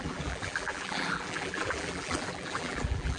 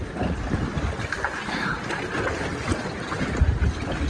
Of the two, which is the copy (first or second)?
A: first